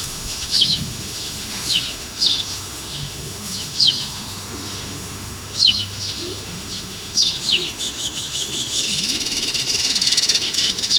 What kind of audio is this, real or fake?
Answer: fake